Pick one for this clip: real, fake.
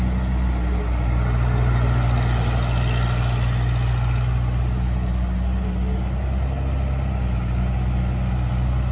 real